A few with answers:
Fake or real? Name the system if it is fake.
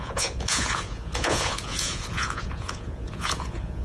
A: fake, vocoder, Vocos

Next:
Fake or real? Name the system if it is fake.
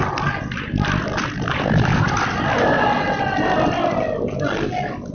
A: real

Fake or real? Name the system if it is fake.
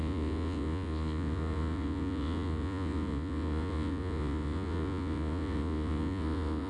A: fake, vocoder, Vocos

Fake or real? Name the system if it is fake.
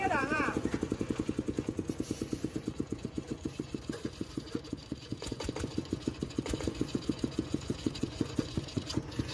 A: fake, vocoder, Vocos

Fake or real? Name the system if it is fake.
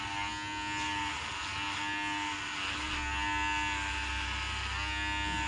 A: real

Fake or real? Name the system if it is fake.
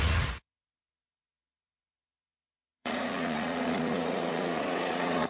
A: fake, vocoder, Vocos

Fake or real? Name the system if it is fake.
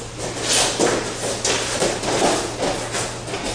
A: real